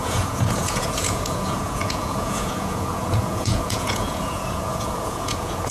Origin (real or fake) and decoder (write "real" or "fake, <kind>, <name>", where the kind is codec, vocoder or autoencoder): fake, vocoder, Vocos